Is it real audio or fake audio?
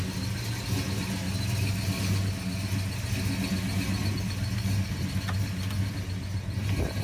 real